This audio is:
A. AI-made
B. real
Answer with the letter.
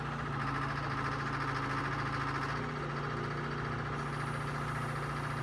B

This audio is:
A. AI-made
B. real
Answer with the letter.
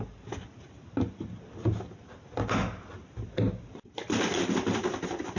B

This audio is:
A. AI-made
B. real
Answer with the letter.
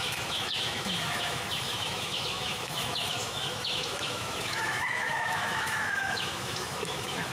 A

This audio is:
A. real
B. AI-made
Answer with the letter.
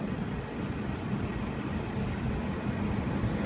A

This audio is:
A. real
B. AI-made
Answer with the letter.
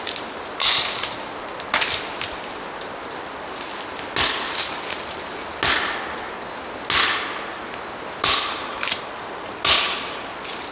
A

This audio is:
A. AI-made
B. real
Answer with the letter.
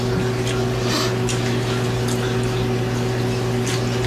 B